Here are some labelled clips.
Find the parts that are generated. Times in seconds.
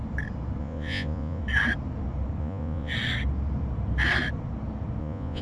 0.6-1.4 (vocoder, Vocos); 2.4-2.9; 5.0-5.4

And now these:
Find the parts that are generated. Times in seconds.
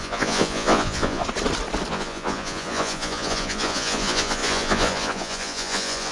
0.0-1.2 (vocoder, Vocos); 1.9-6.1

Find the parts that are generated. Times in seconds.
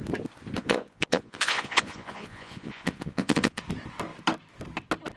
0.6-3.6 (vocoder, Vocos)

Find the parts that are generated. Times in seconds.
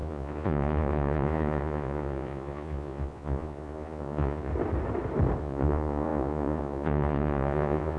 0.0-4.5 (vocoder, Vocos); 5.4-8.0